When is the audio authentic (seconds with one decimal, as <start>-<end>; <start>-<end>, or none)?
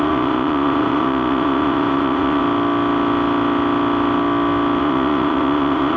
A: 2.4-4.8